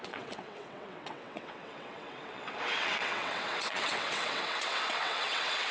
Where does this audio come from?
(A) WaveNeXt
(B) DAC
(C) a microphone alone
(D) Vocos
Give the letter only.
A